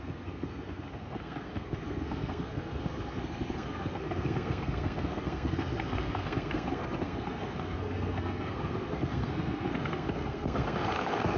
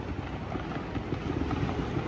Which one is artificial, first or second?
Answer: first